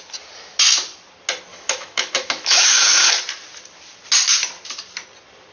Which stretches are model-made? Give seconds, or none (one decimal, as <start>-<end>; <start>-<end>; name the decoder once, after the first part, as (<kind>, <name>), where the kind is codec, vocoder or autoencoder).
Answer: 1.5-3.0 (autoencoder, DAC-VAE)